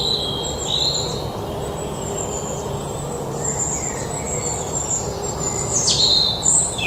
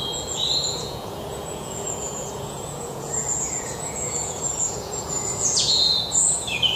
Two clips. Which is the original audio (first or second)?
first